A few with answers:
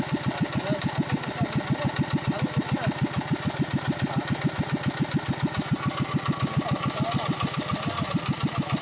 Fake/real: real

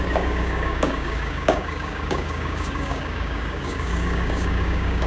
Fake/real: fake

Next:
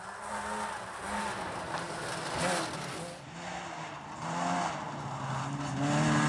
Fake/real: real